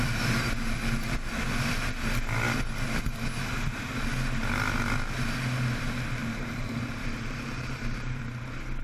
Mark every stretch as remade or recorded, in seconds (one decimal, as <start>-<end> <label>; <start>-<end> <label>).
0.0-6.2 recorded; 6.2-8.2 remade; 8.2-8.8 recorded